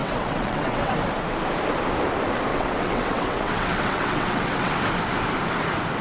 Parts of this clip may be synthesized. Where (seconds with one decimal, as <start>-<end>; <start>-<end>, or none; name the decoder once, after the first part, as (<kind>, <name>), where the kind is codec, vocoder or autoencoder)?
0.0-0.9 (vocoder, WaveNeXt); 2.5-4.7